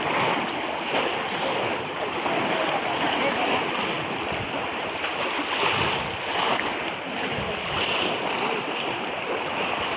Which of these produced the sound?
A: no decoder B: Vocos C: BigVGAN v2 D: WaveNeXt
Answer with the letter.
A